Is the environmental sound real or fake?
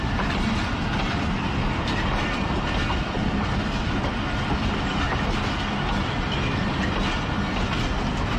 real